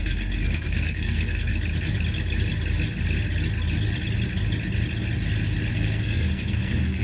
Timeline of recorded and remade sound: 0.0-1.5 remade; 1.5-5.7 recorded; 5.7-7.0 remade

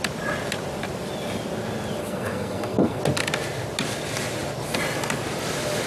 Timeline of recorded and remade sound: 0.0-2.0 recorded; 2.0-3.0 remade; 3.0-5.9 recorded

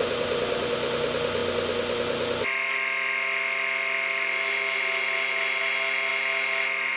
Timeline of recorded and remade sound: 0.0-7.0 recorded

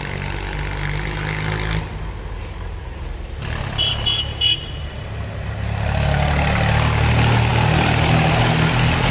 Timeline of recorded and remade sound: 0.0-9.1 recorded

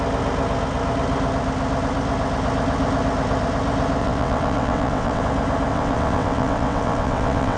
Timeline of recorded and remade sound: 0.0-4.0 recorded; 4.0-5.2 remade; 5.2-5.7 recorded; 5.7-7.6 remade

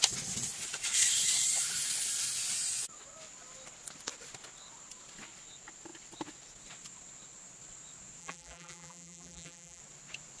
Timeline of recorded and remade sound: 0.0-8.2 recorded; 8.2-9.8 remade; 9.8-10.4 recorded